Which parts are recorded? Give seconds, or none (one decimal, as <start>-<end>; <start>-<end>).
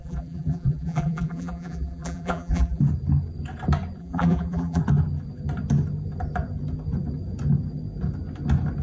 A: 2.8-4.0; 4.8-8.8